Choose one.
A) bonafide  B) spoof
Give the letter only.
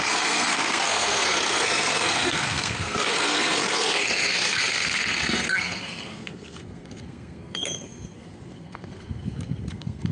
B